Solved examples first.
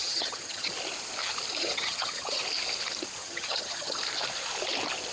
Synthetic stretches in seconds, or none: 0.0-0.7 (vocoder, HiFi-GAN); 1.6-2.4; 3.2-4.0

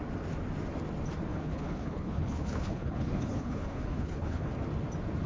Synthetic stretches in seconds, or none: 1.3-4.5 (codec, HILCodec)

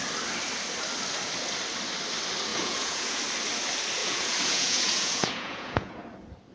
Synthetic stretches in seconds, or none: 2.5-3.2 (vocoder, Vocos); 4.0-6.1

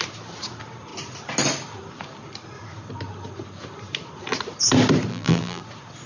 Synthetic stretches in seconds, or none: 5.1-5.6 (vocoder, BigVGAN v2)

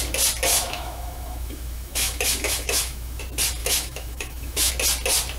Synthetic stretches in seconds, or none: 0.5-3.2 (autoencoder, DAC-VAE); 3.6-4.7

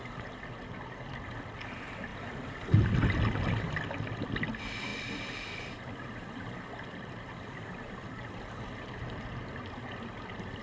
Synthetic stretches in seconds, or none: 2.1-2.8 (vocoder, BigVGAN v2); 4.9-7.7

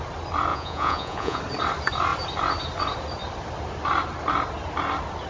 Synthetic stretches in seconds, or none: 0.5-1.4 (vocoder, Vocos)

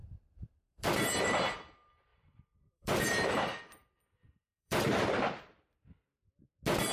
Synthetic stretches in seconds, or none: 0.0-1.4 (vocoder, BigVGAN v2); 2.1-6.2